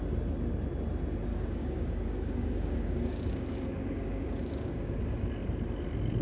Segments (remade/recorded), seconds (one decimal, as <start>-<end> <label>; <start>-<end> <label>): 0.0-1.3 recorded; 1.3-5.0 remade; 5.0-6.2 recorded

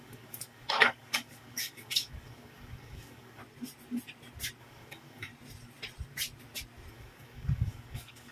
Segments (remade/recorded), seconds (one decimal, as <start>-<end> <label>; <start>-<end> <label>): 0.0-3.4 remade; 3.4-4.6 recorded; 4.6-5.3 remade; 5.3-6.9 recorded; 6.9-8.3 remade

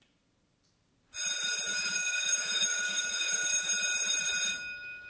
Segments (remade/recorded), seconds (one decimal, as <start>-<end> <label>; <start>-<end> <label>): 0.0-1.7 recorded; 1.7-3.7 remade; 3.7-5.1 recorded

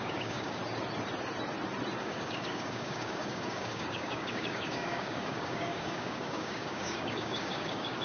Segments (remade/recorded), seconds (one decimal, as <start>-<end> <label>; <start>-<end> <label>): 0.0-0.6 remade; 0.6-2.0 recorded; 2.0-8.0 remade

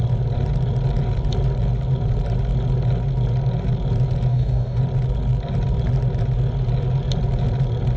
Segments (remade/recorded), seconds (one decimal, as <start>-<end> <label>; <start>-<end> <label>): 0.0-4.3 recorded; 4.3-4.8 remade; 4.8-8.0 recorded

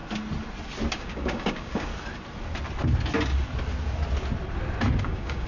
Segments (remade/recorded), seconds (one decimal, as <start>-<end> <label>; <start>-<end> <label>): 0.0-0.9 recorded; 0.9-1.9 remade; 1.9-5.0 recorded; 5.0-5.5 remade

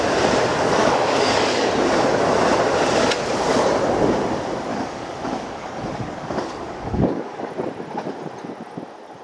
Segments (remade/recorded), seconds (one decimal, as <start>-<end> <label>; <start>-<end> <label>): 0.0-0.5 recorded; 0.5-1.7 remade; 1.7-4.7 recorded; 4.7-7.5 remade; 7.5-9.2 recorded